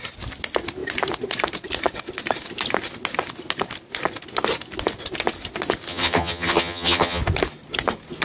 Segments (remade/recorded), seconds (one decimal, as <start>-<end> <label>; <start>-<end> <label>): 0.0-5.9 recorded; 5.9-7.2 remade; 7.2-8.2 recorded